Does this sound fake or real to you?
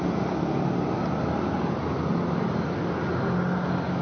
real